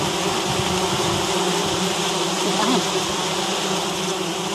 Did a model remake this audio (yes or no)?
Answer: no